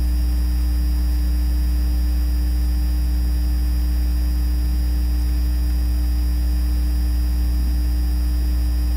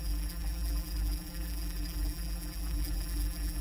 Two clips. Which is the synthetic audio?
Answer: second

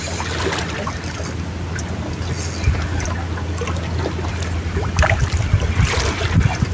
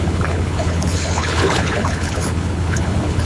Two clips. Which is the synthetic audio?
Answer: second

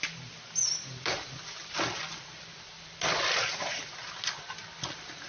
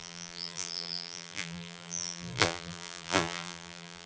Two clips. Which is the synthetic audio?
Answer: second